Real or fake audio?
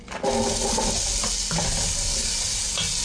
real